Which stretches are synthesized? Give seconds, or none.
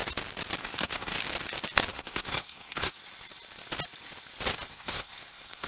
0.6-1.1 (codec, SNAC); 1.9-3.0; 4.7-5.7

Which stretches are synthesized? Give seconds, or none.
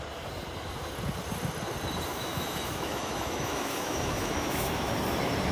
2.1-4.9 (autoencoder, DAC-VAE)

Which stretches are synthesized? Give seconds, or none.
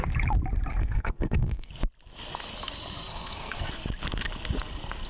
0.8-1.7 (codec, SNAC); 3.1-3.7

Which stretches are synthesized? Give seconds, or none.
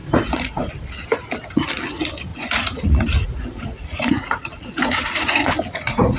0.0-0.7 (vocoder, Vocos); 2.3-6.2